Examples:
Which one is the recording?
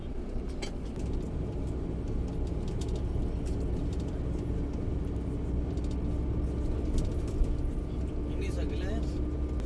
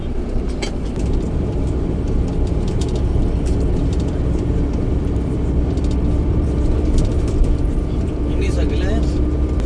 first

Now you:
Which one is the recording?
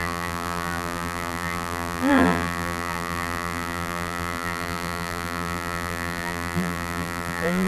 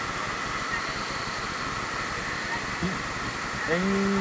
second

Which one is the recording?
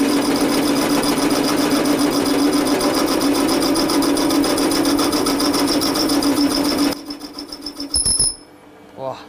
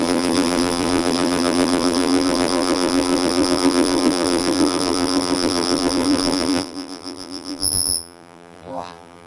first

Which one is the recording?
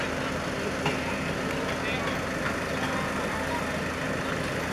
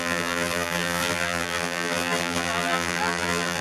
first